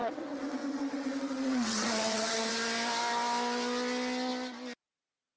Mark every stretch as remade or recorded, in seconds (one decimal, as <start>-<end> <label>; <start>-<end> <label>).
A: 0.0-2.5 remade; 2.5-5.4 recorded